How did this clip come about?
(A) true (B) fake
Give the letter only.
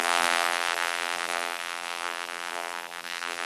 B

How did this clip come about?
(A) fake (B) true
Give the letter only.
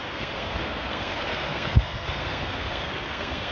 A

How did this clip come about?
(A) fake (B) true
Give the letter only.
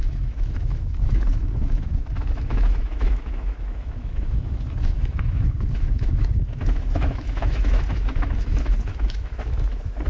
A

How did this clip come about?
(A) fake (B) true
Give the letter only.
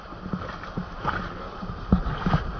B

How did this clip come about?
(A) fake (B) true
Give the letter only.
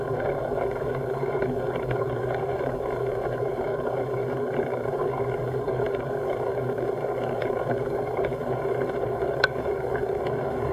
A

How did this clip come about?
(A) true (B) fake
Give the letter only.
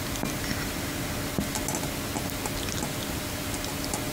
A